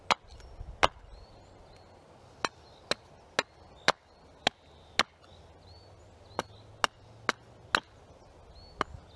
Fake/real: real